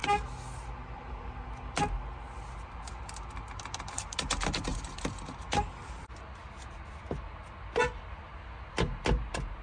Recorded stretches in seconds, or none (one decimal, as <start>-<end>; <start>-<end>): 0.0-9.6